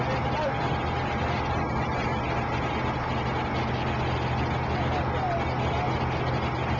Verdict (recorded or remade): recorded